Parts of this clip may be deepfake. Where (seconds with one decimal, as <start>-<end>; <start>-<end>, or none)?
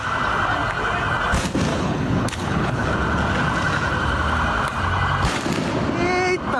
1.7-2.9